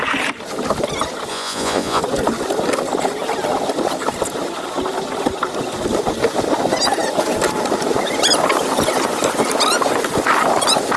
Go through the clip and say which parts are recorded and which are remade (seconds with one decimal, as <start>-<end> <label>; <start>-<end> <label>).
0.0-1.3 recorded; 1.3-2.0 remade; 2.0-11.0 recorded